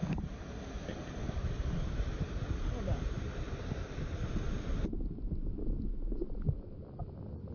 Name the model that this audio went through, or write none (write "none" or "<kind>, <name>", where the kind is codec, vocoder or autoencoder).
none